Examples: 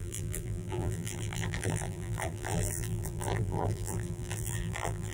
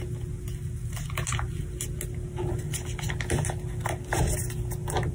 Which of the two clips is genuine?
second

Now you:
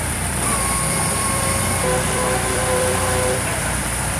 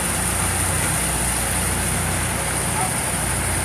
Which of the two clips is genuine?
second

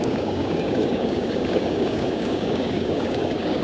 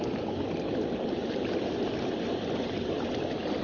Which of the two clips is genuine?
second